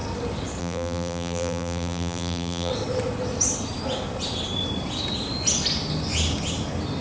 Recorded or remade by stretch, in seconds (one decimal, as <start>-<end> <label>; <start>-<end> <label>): 0.0-0.6 recorded; 0.6-2.7 remade; 2.7-7.0 recorded

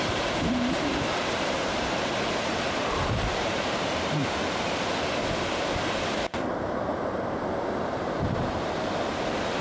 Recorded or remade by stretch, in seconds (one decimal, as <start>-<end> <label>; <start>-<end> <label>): 0.0-4.2 remade; 4.2-6.6 recorded; 6.6-9.6 remade

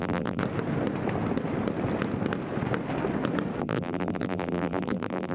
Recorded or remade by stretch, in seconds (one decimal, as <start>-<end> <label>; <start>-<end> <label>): 0.0-0.4 remade; 0.4-3.6 recorded; 3.6-5.3 remade